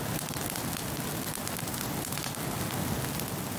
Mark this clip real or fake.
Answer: real